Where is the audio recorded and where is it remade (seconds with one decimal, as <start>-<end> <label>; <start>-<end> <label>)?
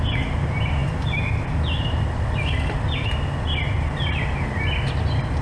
0.0-5.4 recorded